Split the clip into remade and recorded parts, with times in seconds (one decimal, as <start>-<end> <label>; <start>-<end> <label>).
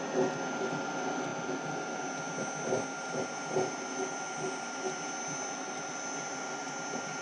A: 0.0-7.2 recorded